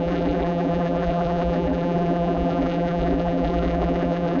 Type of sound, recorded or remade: remade